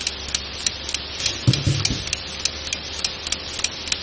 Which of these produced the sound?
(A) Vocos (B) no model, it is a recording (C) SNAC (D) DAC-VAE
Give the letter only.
B